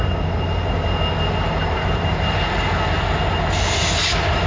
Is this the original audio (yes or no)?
yes